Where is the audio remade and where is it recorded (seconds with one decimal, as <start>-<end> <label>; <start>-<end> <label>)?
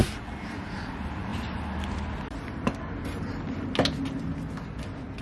0.0-5.2 recorded